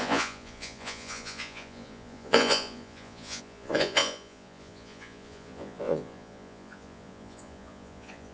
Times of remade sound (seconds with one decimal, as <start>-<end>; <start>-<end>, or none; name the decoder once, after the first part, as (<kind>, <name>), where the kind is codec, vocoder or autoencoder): 0.0-8.3 (vocoder, Vocos)